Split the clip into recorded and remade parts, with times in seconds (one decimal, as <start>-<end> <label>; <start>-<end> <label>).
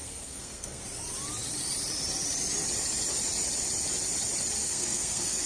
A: 0.0-0.8 remade; 0.8-4.6 recorded; 4.6-5.5 remade